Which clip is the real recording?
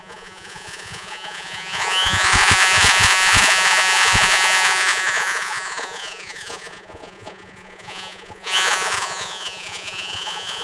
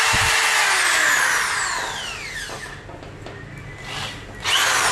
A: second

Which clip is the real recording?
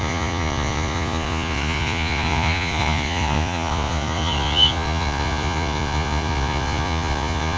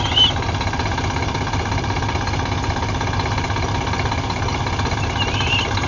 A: second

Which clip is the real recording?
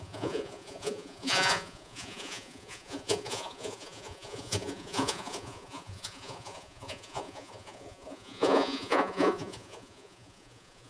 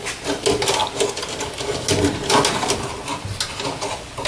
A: second